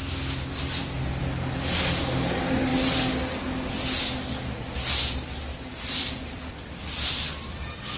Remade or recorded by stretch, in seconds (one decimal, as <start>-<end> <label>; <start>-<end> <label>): 0.0-5.5 recorded; 5.5-8.0 remade